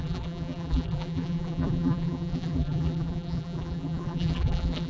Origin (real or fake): fake